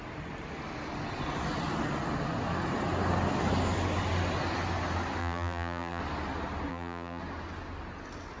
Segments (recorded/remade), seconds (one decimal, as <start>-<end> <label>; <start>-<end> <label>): 0.0-5.2 recorded; 5.2-6.0 remade; 6.0-6.7 recorded; 6.7-7.2 remade; 7.2-8.4 recorded